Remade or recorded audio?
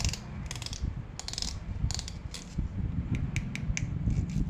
recorded